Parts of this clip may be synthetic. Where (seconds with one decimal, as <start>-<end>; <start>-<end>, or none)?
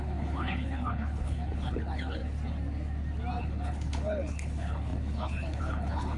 0.0-2.2; 3.4-6.2